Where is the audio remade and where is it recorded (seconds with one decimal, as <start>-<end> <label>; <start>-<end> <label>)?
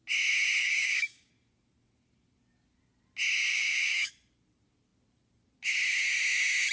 0.0-0.6 recorded; 0.6-1.3 remade; 1.3-3.5 recorded; 3.5-4.1 remade; 4.1-6.7 recorded